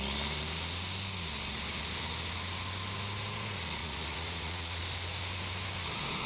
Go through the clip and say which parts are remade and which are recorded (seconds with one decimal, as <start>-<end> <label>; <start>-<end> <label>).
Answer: 0.0-3.8 recorded; 3.8-4.8 remade; 4.8-6.3 recorded